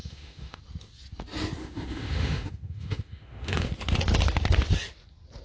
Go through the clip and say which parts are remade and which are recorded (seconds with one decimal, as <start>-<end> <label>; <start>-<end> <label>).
0.0-0.6 remade; 0.6-1.6 recorded; 1.6-3.7 remade; 3.7-5.4 recorded